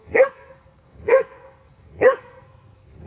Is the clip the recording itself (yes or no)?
no